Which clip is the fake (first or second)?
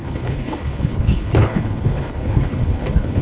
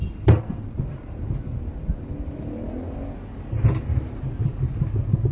first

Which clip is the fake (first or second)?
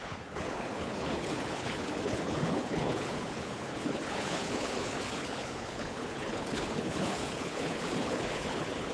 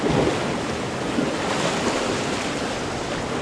first